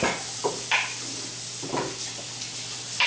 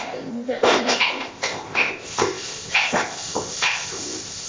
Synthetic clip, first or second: second